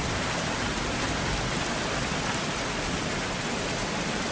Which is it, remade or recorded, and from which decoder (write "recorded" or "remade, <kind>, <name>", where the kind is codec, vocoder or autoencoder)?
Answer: remade, vocoder, BigVGAN v2